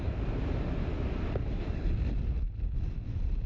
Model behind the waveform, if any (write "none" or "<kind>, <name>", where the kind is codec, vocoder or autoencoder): none